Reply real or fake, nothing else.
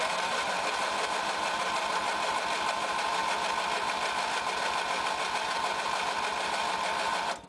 real